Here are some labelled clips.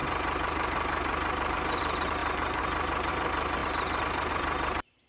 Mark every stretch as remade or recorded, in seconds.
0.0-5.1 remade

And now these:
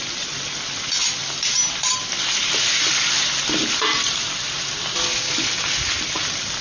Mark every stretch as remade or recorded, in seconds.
0.0-6.6 recorded